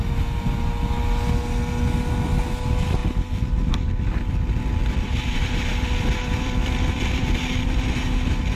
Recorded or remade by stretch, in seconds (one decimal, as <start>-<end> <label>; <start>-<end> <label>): 0.0-4.8 recorded; 4.8-7.9 remade; 7.9-8.6 recorded